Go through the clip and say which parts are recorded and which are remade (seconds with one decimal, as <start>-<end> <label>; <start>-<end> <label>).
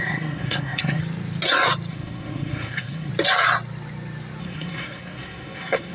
0.0-1.0 remade; 1.0-1.9 recorded; 1.9-3.1 remade; 3.1-4.4 recorded; 4.4-5.9 remade